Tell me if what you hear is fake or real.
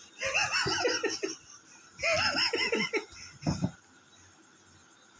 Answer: real